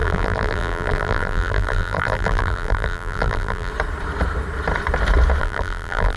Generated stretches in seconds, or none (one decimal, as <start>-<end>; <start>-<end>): 0.0-3.7; 5.4-6.2